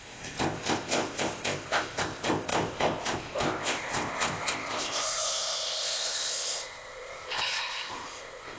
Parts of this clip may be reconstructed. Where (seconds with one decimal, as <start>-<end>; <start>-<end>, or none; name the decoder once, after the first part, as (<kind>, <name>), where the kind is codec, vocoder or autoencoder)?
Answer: 0.0-8.6 (codec, ZipCodec)